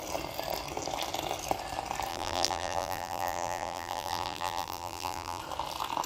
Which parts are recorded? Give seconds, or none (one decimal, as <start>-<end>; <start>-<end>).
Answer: 0.0-2.1; 5.4-6.1